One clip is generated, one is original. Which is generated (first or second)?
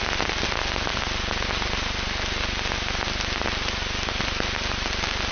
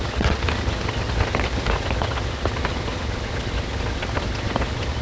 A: second